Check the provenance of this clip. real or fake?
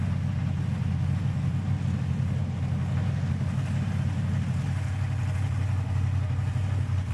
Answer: real